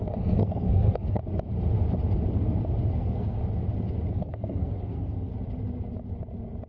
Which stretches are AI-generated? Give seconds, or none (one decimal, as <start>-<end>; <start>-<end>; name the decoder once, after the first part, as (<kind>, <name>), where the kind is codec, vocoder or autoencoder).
0.0-1.2 (codec, SNAC); 2.9-3.4; 4.1-5.3